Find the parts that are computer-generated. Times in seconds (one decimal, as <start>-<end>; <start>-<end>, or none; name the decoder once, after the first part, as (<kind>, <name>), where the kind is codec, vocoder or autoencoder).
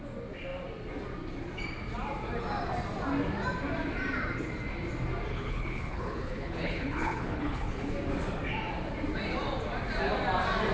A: 5.3-7.9 (codec, HILCodec)